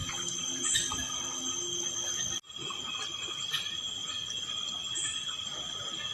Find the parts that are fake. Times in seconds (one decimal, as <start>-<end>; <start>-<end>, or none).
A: none